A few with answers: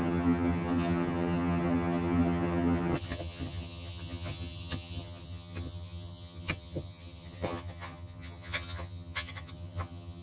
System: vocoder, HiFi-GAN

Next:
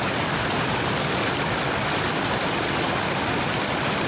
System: none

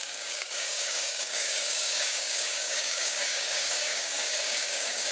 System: codec, DAC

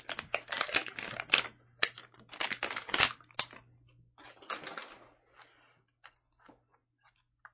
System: none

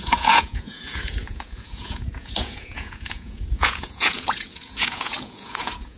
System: vocoder, Vocos